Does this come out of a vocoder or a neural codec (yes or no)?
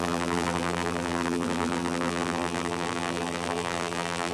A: yes